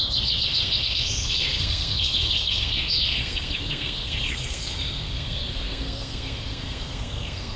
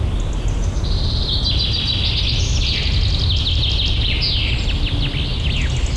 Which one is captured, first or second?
second